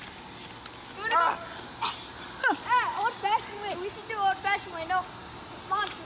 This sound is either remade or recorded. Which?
recorded